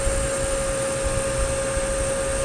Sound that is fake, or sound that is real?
real